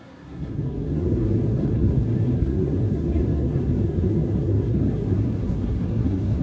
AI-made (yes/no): yes